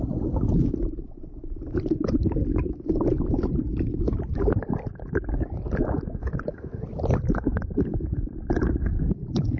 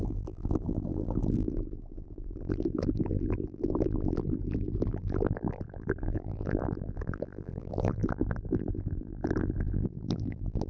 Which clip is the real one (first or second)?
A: first